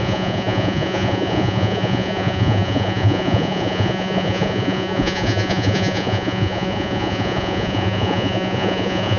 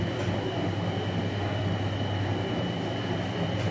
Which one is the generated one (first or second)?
first